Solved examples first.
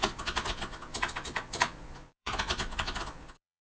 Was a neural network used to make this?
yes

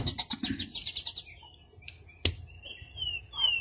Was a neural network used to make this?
no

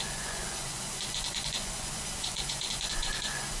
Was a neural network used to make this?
yes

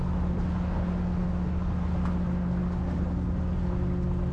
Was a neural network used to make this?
no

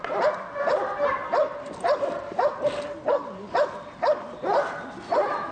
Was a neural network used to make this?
no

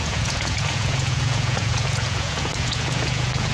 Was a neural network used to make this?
yes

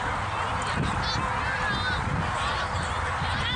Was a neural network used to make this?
no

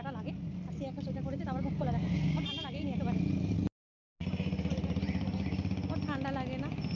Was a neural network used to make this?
no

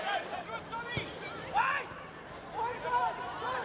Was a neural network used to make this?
no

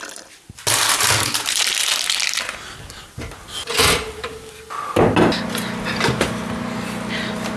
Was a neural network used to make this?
no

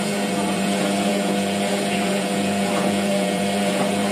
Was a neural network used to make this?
yes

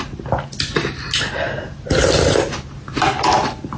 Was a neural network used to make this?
no